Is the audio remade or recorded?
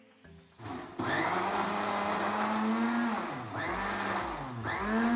recorded